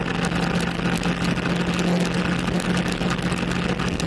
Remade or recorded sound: recorded